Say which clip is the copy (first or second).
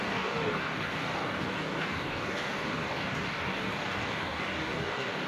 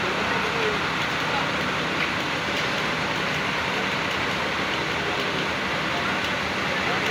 first